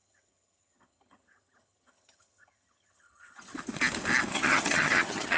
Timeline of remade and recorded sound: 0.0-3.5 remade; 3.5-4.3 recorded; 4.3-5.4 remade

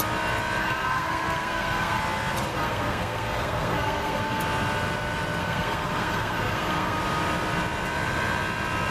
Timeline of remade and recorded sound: 0.0-0.6 recorded; 0.6-2.0 remade; 2.0-2.5 recorded; 2.5-4.4 remade; 4.4-5.4 recorded; 5.4-7.0 remade; 7.0-8.9 recorded

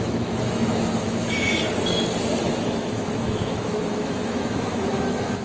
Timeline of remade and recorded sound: 0.0-1.5 remade; 1.5-2.4 recorded; 2.4-5.4 remade

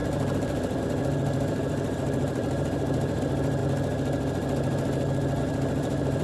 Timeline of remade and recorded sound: 0.0-3.6 remade; 3.6-5.4 recorded; 5.4-6.2 remade

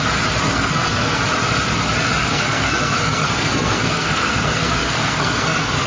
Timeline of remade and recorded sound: 0.0-0.5 recorded; 0.5-1.2 remade; 1.2-2.2 recorded; 2.2-5.9 remade

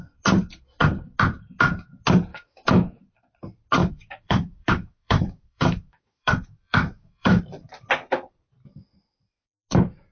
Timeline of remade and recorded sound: 0.0-2.3 recorded; 2.3-3.0 remade; 3.0-3.8 recorded; 3.8-7.4 remade; 7.4-10.1 recorded

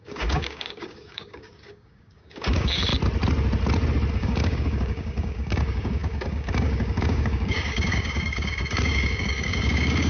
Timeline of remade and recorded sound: 0.0-2.9 remade; 2.9-4.1 recorded; 4.1-10.1 remade